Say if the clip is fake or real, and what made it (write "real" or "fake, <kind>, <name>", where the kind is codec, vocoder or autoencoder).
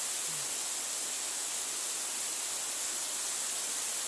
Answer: real